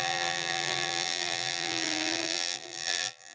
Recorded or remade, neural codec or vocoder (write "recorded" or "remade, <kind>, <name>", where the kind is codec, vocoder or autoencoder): remade, vocoder, BigVGAN v2